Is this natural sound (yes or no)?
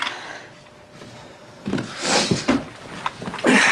yes